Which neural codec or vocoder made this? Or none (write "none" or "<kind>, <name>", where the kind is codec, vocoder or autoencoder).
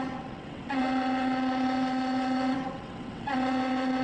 vocoder, WaveNeXt